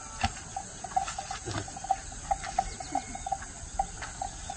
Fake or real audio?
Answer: real